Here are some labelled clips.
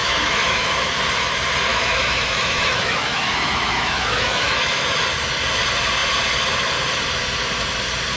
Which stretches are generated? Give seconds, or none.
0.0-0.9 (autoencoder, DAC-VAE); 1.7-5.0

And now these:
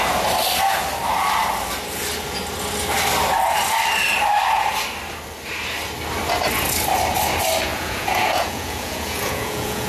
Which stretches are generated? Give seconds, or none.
7.7-9.9 (vocoder, Vocos)

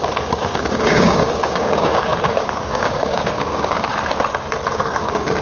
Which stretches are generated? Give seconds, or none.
0.0-3.9 (codec, DAC); 5.0-5.4

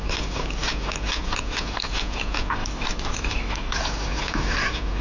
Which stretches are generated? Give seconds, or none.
2.6-3.8 (autoencoder, DAC-VAE)